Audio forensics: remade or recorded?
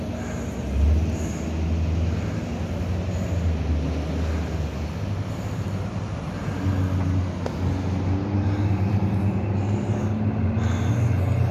recorded